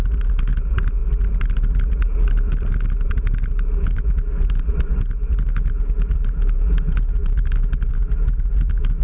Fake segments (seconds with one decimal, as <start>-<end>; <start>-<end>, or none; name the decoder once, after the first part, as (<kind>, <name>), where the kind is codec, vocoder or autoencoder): none